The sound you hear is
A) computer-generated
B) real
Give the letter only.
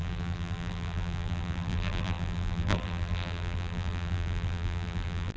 A